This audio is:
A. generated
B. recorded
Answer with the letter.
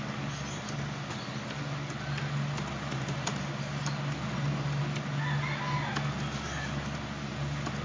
B